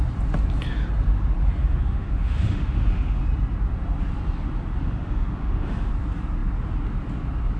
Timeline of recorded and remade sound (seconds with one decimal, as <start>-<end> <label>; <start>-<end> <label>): 0.0-1.6 recorded; 1.6-3.2 remade; 3.2-4.8 recorded; 4.8-5.9 remade; 5.9-7.6 recorded